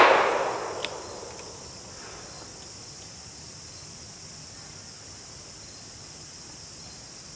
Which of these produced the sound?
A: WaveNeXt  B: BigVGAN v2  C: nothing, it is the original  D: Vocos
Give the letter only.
C